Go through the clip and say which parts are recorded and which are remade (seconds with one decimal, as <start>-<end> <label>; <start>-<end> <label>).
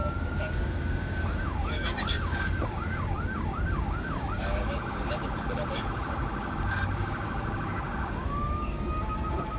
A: 0.0-0.5 recorded; 0.5-9.6 remade